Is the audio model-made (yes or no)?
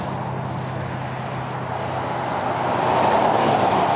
no